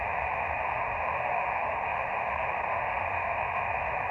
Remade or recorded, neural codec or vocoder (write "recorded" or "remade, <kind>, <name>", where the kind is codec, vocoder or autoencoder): remade, autoencoder, DAC-VAE